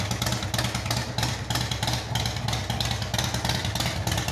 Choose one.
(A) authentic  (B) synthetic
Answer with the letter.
A